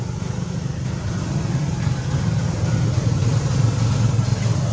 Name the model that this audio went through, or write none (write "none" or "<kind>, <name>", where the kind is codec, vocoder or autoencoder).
none